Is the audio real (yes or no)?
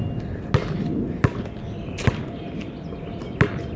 yes